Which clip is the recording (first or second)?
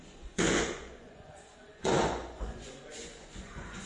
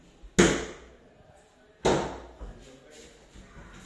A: second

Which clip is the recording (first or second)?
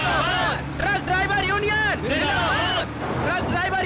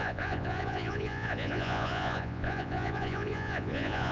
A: first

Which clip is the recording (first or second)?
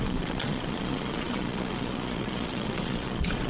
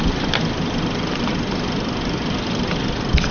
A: second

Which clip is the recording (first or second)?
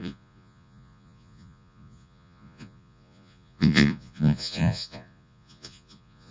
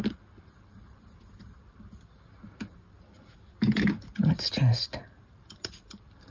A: second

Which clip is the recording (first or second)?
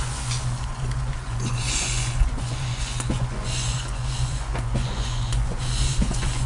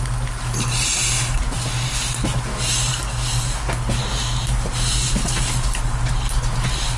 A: second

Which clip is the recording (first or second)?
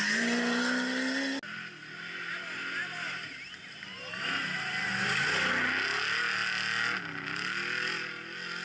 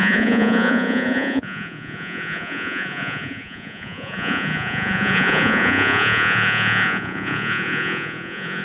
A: first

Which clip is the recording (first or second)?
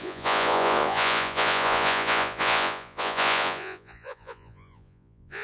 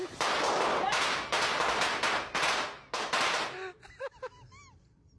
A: second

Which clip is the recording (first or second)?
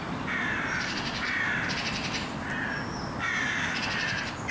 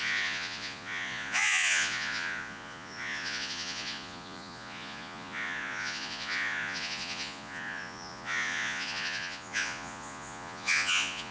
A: first